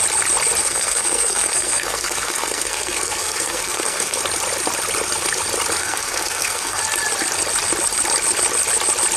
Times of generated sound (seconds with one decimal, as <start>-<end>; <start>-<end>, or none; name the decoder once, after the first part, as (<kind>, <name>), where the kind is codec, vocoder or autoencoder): 0.6-4.2 (codec, SNAC); 5.8-6.8